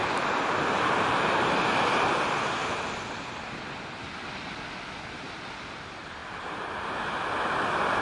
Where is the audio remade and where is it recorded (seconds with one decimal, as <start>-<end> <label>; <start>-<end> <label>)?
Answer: 0.0-6.2 recorded; 6.2-6.8 remade; 6.8-8.0 recorded